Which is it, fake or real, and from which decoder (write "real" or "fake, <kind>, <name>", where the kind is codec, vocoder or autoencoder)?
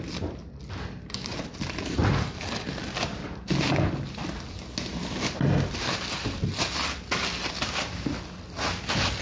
real